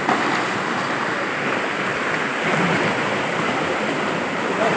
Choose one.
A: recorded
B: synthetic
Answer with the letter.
A